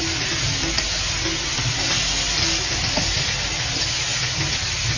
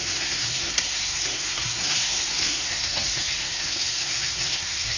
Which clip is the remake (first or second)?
second